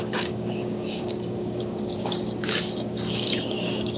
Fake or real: fake